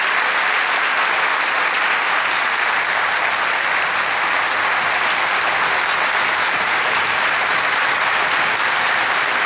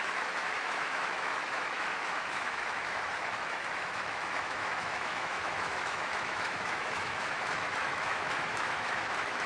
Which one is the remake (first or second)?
second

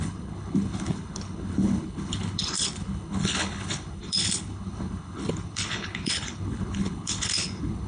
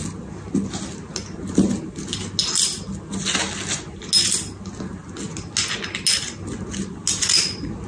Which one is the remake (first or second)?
first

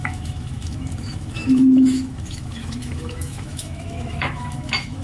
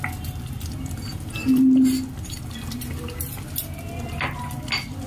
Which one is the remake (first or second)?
first